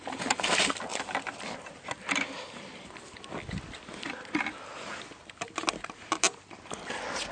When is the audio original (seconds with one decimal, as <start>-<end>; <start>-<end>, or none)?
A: 0.0-7.3